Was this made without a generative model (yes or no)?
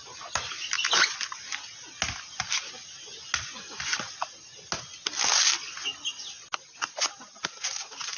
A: yes